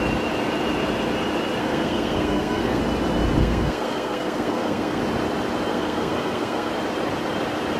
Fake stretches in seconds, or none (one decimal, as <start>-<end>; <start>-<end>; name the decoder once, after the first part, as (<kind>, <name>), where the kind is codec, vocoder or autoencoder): 1.6-2.8 (codec, SNAC); 3.4-5.0; 5.7-6.7